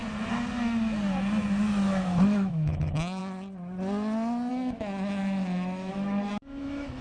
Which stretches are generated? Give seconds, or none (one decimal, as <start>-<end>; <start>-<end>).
1.7-3.2; 4.5-7.0